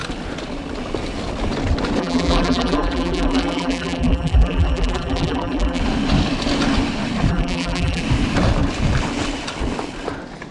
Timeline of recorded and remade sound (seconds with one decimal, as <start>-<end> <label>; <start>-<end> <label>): 0.0-2.0 recorded; 2.0-5.8 remade; 5.8-7.3 recorded; 7.3-8.0 remade; 8.0-10.5 recorded